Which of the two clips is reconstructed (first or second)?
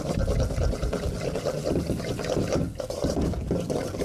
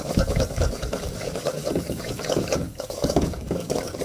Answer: second